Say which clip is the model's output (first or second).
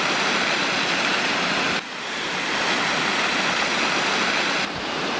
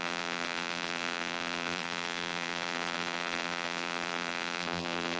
second